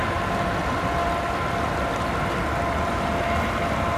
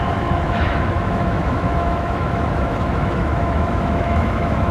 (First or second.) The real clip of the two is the first